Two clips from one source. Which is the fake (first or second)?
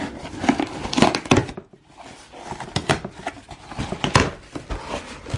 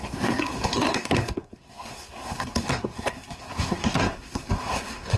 second